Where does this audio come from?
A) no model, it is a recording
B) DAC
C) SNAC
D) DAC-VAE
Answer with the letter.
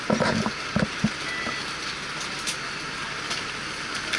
A